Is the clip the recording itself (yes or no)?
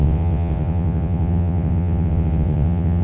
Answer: no